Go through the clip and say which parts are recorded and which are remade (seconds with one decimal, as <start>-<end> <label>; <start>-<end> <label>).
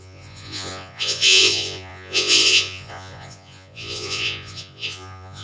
0.0-5.4 remade